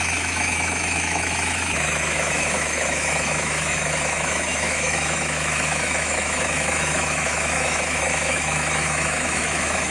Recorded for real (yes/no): no